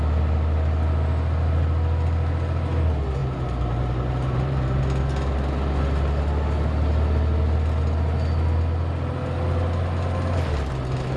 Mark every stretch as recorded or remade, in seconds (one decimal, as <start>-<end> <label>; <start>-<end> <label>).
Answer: 0.0-3.2 recorded; 3.2-4.8 remade; 4.8-11.2 recorded